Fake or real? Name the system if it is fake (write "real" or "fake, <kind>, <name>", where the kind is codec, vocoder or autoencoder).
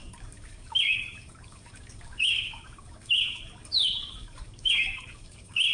fake, codec, DAC